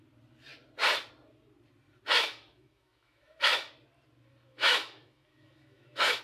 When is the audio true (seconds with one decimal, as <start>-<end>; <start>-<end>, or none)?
0.0-2.1; 3.7-4.5